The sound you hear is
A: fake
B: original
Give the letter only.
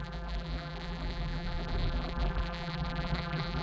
A